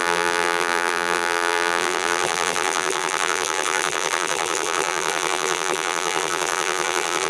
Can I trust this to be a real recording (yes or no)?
no